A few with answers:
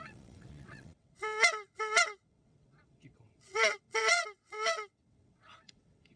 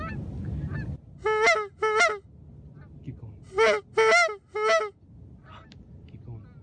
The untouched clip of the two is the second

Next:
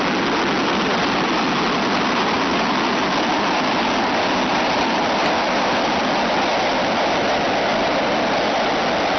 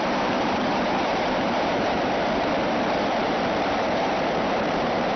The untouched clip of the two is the first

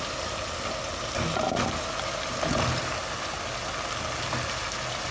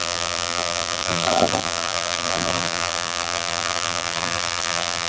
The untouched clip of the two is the first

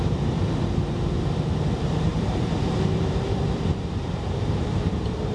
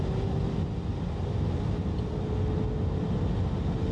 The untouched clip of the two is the second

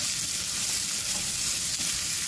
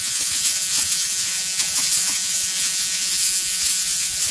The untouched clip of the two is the first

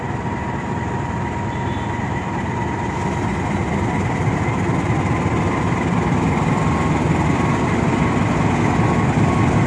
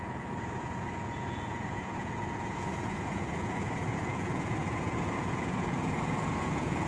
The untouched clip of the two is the first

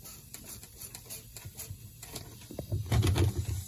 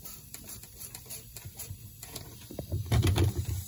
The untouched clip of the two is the first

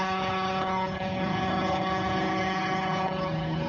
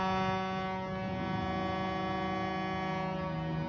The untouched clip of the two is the second